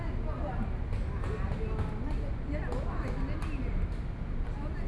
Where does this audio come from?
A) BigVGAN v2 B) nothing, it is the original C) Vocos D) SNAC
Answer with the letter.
B